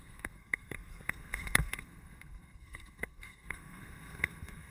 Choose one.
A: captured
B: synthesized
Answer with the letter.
B